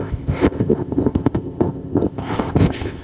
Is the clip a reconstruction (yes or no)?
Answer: yes